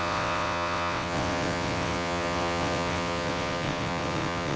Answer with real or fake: fake